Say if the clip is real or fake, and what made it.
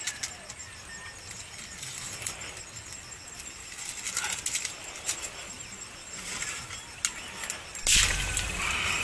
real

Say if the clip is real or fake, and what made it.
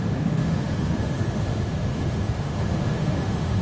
fake, autoencoder, DAC-VAE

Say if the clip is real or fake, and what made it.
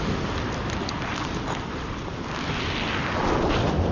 real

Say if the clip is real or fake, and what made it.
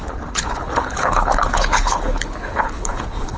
fake, codec, HILCodec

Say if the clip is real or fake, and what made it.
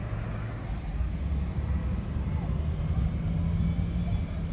real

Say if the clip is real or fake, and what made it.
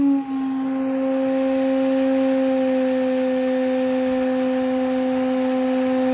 real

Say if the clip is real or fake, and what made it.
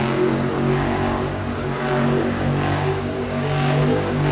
fake, codec, DAC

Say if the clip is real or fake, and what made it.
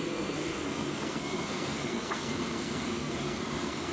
fake, codec, SNAC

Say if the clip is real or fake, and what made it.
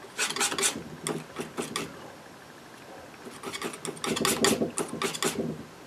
real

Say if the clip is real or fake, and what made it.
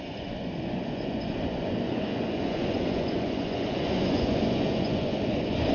fake, vocoder, Vocos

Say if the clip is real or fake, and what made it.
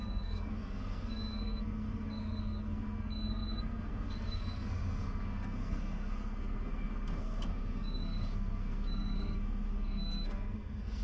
fake, codec, SNAC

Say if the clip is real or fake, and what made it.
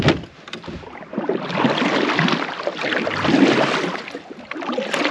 real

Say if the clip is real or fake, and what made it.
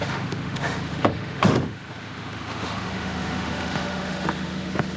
fake, autoencoder, DAC-VAE